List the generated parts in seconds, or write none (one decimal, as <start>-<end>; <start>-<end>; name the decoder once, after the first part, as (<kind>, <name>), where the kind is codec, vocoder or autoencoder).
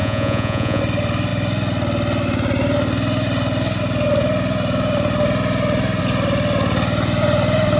0.0-0.8 (vocoder, Vocos)